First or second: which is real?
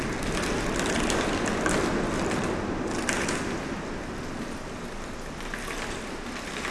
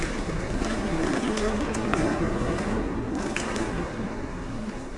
first